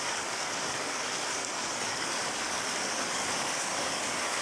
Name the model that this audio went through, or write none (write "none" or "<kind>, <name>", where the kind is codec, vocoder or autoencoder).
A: codec, DAC